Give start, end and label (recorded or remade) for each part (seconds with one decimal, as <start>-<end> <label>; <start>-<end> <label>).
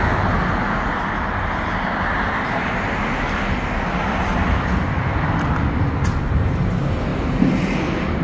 0.0-7.1 recorded; 7.1-8.2 remade